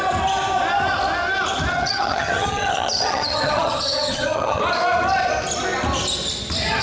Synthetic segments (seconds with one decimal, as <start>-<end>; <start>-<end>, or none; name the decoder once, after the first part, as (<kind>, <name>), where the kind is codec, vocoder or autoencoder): 1.7-4.6 (vocoder, HiFi-GAN)